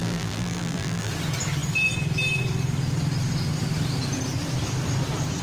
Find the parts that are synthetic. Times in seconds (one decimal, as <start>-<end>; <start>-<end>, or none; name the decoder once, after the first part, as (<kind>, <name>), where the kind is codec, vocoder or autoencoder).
0.0-1.1 (vocoder, BigVGAN v2)